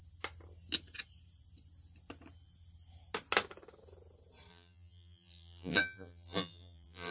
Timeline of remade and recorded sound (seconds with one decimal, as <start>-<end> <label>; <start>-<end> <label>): 0.0-4.5 recorded; 4.5-7.1 remade